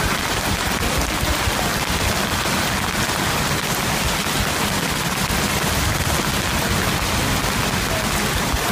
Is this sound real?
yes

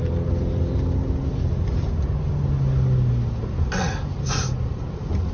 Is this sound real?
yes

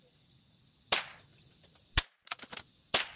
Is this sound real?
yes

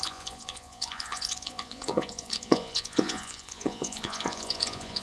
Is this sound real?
no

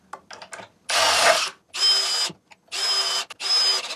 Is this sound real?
yes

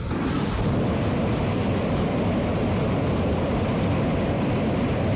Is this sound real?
yes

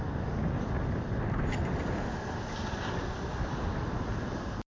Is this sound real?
yes